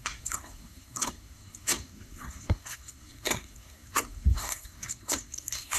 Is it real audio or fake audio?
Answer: fake